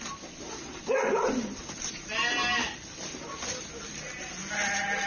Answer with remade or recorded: recorded